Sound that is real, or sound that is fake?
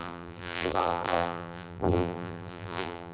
fake